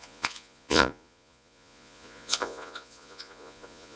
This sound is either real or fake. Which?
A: fake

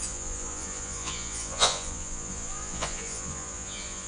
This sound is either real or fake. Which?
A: fake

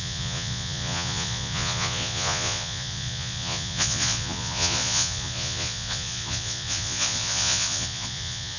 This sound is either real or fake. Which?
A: fake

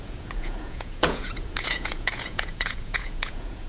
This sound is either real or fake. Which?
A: fake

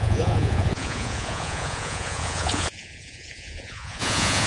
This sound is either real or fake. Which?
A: fake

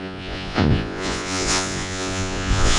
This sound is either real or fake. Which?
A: fake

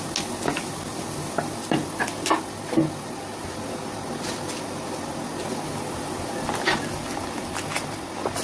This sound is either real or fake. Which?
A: real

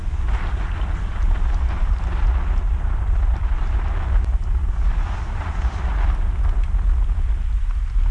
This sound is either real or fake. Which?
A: real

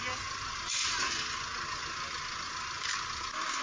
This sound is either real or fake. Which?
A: real